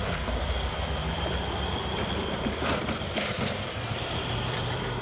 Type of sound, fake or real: fake